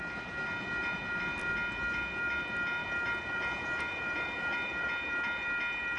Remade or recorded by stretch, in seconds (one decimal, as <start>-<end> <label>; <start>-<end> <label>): 0.0-2.8 recorded; 2.8-4.9 remade; 4.9-6.0 recorded